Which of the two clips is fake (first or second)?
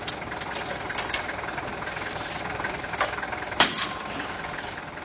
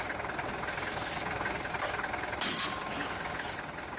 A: first